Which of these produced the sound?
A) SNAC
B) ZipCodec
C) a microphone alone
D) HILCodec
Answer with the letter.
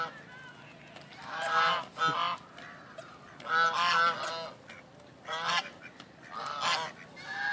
C